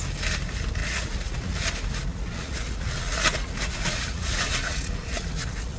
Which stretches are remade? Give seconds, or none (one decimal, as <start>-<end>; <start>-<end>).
0.8-1.7; 2.1-5.8